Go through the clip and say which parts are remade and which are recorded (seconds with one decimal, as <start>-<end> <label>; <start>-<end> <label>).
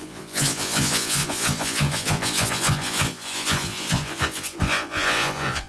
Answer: 0.0-5.7 remade